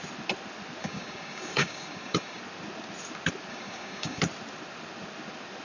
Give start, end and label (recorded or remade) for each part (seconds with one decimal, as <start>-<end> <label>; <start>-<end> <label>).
0.0-0.8 recorded; 0.8-2.4 remade; 2.4-3.5 recorded; 3.5-4.2 remade; 4.2-5.6 recorded

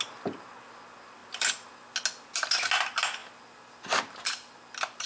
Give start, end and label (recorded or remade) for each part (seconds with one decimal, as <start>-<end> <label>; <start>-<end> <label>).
0.0-5.1 recorded

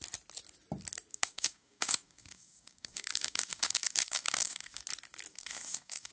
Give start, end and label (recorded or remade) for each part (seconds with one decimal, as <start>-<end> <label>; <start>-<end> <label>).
0.0-1.1 recorded; 1.1-4.8 remade; 4.8-5.3 recorded; 5.3-6.1 remade

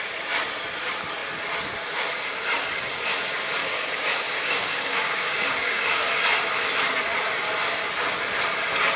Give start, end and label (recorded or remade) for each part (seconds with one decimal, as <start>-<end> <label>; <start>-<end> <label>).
0.0-3.6 recorded; 3.6-6.0 remade; 6.0-9.0 recorded

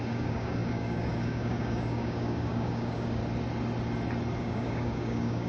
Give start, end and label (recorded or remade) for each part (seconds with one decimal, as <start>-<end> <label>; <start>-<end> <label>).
0.0-3.2 remade; 3.2-4.4 recorded; 4.4-5.5 remade